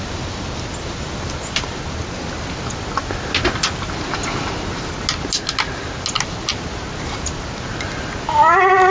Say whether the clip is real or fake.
real